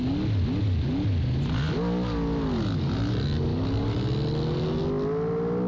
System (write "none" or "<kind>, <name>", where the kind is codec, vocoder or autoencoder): none